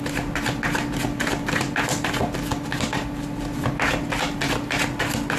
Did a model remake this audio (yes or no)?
no